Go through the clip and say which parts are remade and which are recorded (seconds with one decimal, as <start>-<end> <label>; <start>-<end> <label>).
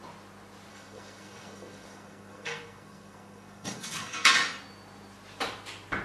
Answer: 0.0-0.7 recorded; 0.7-4.3 remade; 4.3-6.0 recorded